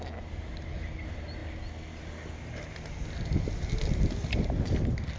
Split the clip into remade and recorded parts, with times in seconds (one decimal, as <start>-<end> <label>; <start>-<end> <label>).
0.0-5.2 recorded